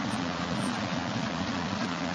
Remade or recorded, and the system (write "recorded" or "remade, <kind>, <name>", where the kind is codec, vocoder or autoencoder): remade, vocoder, Vocos